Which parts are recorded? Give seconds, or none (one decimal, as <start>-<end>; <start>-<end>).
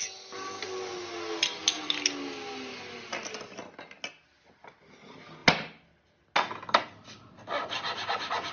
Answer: 0.0-8.5